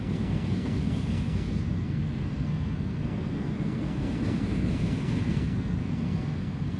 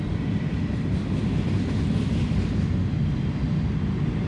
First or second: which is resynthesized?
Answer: first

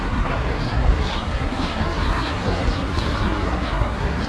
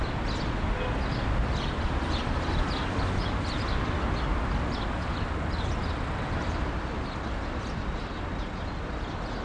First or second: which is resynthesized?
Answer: first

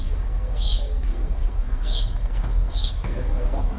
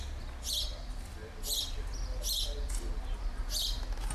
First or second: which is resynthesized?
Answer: first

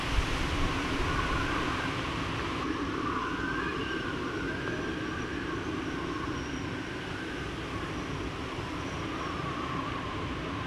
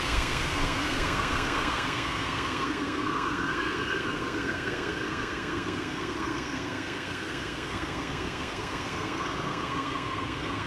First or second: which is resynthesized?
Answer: second